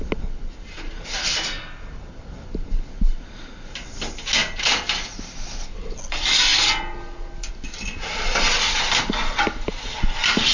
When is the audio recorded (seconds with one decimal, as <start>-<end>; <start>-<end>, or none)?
0.0-10.5